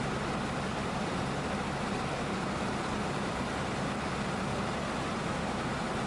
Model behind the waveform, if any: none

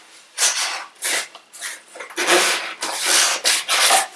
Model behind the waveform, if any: none